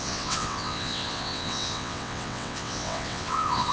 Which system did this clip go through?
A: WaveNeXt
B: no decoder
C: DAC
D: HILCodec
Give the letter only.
A